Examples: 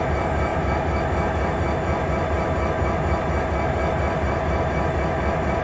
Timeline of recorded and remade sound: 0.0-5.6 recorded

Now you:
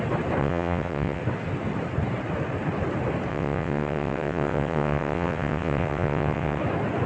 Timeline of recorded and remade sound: 0.0-0.4 recorded; 0.4-1.2 remade; 1.2-3.3 recorded; 3.3-6.6 remade; 6.6-7.1 recorded

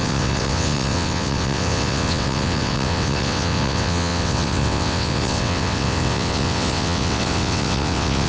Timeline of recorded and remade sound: 0.0-8.3 remade